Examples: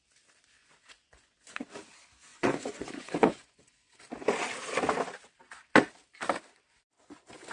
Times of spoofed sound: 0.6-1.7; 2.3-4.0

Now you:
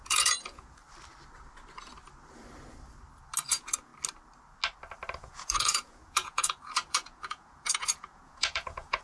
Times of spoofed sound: 0.0-0.8; 3.5-3.9; 5.2-9.0

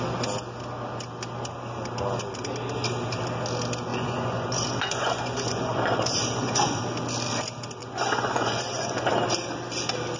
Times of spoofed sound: 3.9-6.8; 7.8-9.1

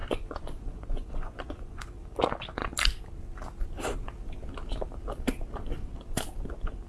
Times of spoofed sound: 0.0-1.8

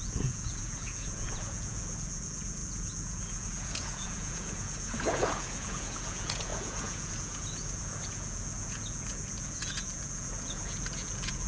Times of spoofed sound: 0.0-11.5

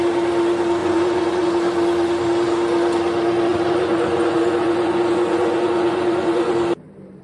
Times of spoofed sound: 0.8-1.5; 3.5-6.5

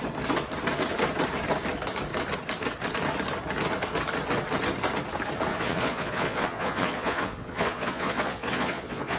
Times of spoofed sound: 5.5-9.2